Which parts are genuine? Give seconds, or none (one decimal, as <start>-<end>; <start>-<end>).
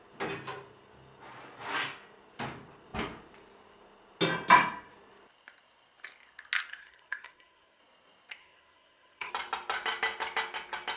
0.0-6.8; 7.8-8.4; 9.3-11.0